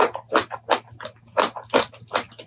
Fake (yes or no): no